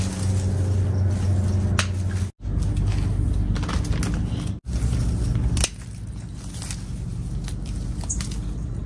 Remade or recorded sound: recorded